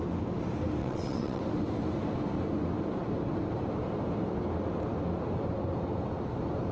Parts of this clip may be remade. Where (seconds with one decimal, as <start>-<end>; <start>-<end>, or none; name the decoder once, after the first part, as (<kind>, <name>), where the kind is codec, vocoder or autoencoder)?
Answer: 0.8-1.4 (vocoder, WaveNeXt)